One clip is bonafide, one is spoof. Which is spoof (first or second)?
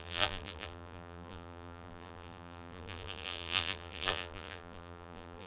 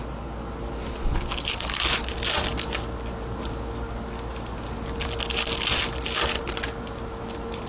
first